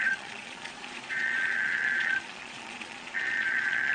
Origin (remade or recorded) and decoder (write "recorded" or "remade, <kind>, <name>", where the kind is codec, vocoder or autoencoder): remade, vocoder, Vocos